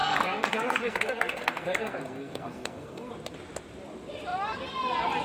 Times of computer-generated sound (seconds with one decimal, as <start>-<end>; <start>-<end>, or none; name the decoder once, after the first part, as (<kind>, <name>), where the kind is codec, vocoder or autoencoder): 0.0-3.1 (codec, SNAC)